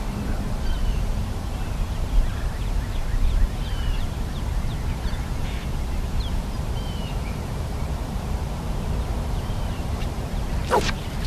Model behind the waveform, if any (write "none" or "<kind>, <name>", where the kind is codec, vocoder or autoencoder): vocoder, BigVGAN v2